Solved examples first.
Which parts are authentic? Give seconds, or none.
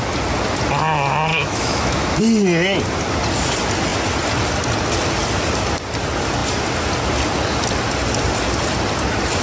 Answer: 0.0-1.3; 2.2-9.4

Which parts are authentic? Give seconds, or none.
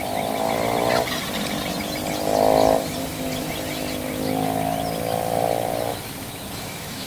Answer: 0.0-5.9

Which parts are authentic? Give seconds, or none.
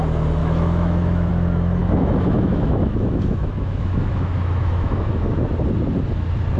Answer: 0.0-0.4; 1.3-1.8; 5.5-6.6